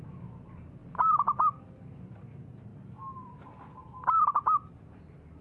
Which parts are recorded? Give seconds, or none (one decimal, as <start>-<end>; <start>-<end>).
0.8-2.2; 2.7-4.7